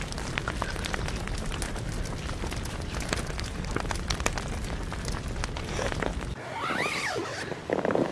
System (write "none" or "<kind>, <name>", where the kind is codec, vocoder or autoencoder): none